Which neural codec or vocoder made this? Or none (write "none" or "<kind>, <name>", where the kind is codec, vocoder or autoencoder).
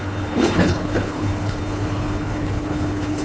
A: codec, HILCodec